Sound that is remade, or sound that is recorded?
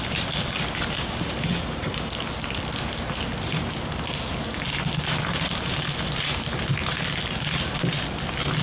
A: recorded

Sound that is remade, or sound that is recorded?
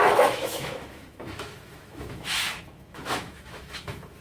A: remade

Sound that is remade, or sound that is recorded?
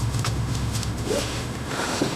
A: remade